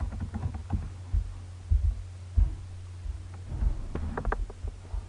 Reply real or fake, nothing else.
real